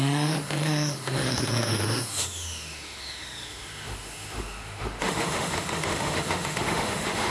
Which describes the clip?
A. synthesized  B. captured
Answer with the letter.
A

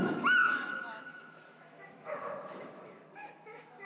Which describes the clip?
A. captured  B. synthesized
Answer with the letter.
B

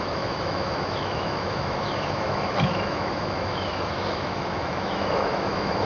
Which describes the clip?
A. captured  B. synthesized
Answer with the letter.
B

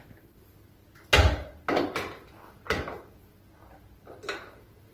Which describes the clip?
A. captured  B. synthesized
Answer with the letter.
A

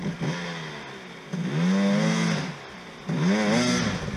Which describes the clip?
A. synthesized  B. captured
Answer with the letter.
B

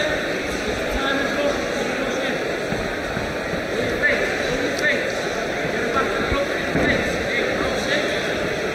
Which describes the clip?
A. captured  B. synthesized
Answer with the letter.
A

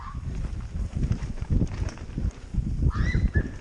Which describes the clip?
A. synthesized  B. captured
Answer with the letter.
B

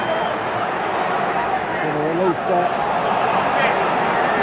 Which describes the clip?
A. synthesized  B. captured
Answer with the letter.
B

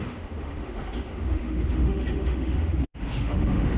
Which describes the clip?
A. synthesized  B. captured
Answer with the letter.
A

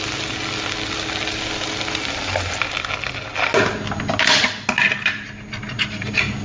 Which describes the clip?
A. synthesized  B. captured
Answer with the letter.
B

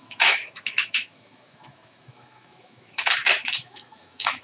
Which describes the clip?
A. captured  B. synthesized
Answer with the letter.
B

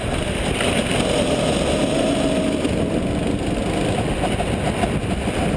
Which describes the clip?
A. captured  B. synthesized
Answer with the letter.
A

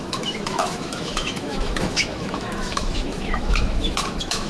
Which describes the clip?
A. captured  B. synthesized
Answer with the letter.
B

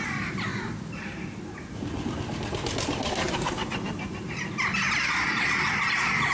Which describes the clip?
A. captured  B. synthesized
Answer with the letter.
A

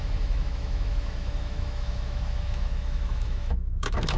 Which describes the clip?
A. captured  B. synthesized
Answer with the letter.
B